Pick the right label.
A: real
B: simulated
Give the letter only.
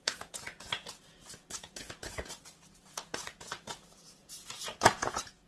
B